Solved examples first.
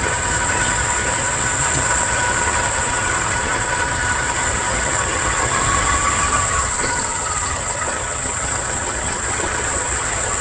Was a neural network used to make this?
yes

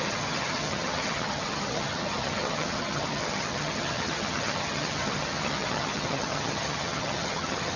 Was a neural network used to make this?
yes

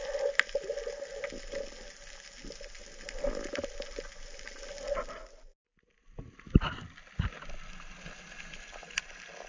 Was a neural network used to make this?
no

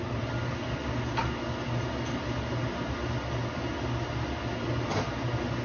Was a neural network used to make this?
no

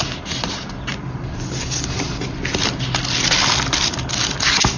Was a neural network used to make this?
no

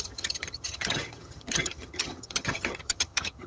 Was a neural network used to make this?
yes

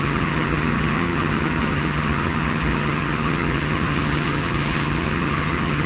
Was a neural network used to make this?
yes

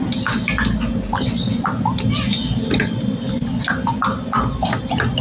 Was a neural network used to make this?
no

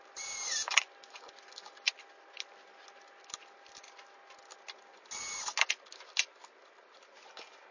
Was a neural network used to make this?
no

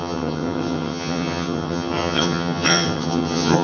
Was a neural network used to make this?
yes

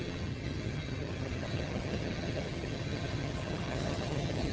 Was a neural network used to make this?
yes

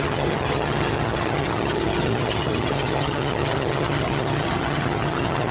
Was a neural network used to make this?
yes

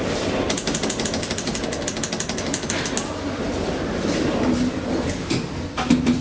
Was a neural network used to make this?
no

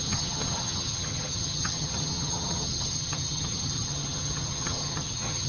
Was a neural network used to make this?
yes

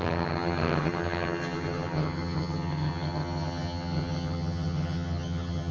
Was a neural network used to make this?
yes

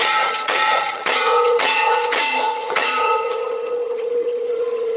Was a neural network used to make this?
yes